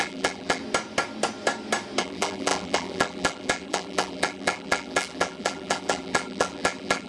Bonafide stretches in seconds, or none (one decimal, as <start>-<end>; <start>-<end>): 0.6-2.0